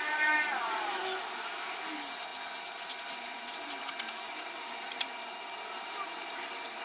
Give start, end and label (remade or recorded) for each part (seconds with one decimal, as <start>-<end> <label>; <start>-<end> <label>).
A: 0.0-6.8 recorded